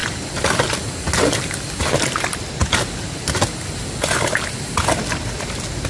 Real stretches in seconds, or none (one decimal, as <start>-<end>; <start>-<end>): 0.0-5.9